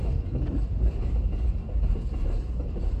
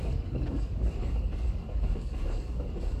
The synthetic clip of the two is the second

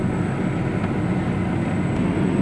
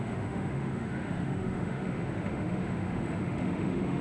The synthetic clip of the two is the second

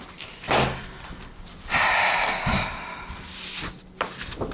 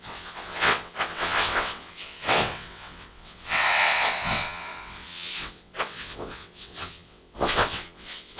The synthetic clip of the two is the second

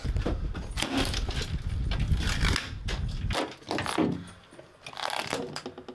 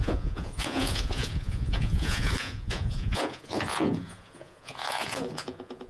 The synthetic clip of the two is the second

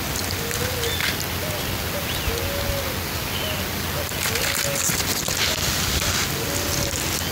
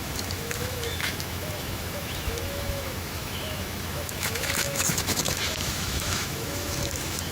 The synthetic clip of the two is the second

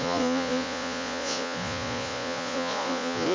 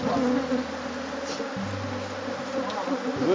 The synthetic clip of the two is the first